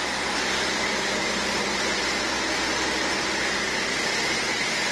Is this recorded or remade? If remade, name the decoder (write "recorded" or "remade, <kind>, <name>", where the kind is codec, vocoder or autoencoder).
recorded